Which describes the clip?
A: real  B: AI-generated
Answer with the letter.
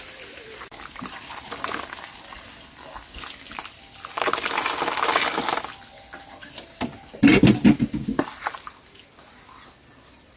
A